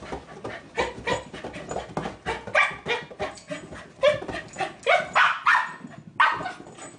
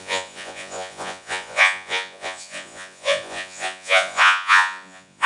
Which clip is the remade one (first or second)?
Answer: second